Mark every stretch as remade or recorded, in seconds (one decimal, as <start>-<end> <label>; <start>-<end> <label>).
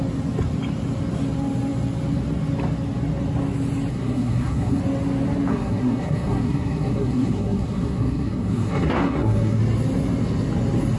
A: 0.0-3.9 recorded; 3.9-4.8 remade; 4.8-5.5 recorded; 5.5-9.6 remade; 9.6-11.0 recorded